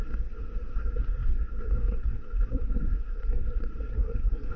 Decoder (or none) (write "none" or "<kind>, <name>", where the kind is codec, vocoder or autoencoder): codec, SNAC